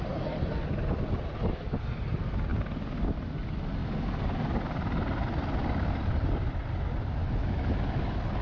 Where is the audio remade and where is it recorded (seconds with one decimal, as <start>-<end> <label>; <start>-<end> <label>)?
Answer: 0.0-7.2 recorded; 7.2-7.7 remade; 7.7-8.4 recorded